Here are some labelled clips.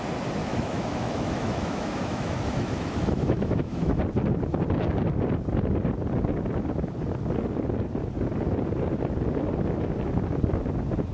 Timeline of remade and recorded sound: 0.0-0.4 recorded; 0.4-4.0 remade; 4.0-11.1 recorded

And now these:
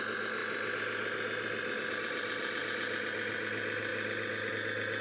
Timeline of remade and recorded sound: 0.0-5.0 recorded

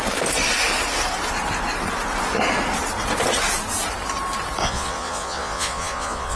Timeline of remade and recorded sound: 0.0-4.6 recorded; 4.6-6.4 remade

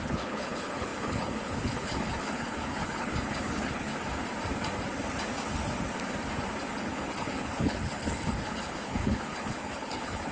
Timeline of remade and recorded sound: 0.0-3.9 remade; 3.9-6.8 recorded; 6.8-10.3 remade

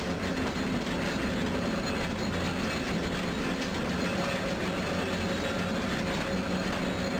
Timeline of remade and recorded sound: 0.0-7.2 recorded

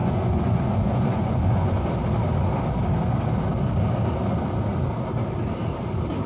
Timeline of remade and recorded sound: 0.0-1.9 remade; 1.9-6.3 recorded

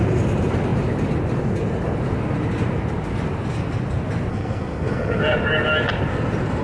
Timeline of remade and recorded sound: 0.0-4.3 recorded; 4.3-5.2 remade; 5.2-6.6 recorded